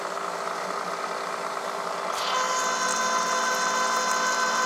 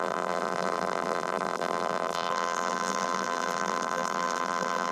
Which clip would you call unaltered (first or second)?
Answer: first